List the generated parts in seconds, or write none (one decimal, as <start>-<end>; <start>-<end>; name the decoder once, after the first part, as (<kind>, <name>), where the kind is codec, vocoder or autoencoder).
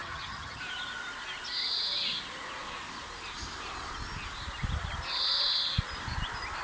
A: 0.0-0.6 (vocoder, HiFi-GAN)